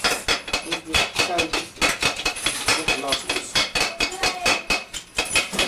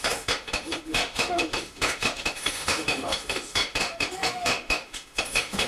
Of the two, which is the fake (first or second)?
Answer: second